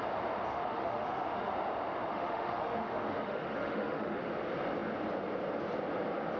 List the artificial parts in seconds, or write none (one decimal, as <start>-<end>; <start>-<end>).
0.5-1.5; 2.1-4.3